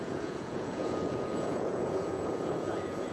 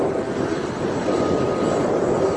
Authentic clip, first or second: second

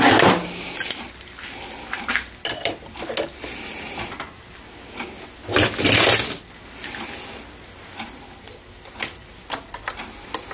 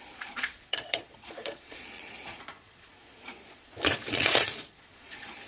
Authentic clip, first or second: first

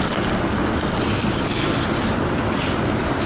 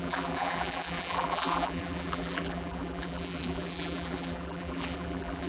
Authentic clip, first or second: first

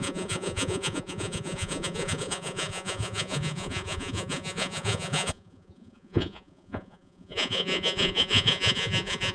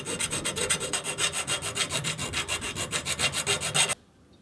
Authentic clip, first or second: second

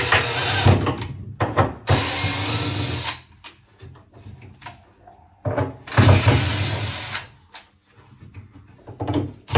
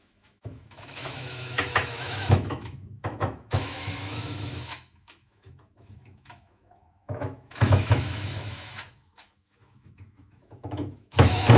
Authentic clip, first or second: first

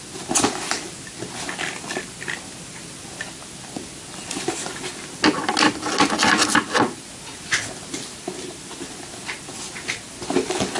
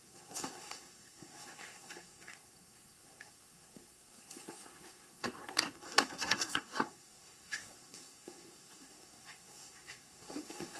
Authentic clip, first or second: first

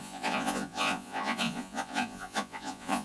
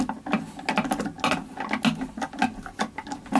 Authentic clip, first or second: second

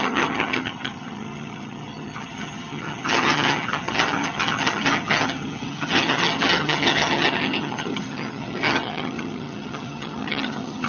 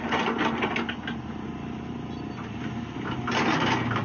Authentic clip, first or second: second